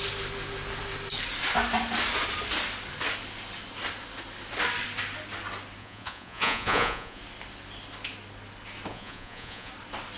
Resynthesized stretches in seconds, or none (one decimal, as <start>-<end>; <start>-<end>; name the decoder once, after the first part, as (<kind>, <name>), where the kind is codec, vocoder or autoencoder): 5.8-7.2 (vocoder, Vocos); 8.9-9.7